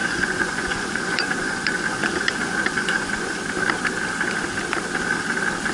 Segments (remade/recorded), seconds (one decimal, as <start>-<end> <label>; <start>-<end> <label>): 0.0-3.4 remade; 3.4-5.7 recorded